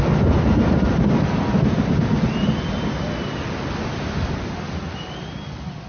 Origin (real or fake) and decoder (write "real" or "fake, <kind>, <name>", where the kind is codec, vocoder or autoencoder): real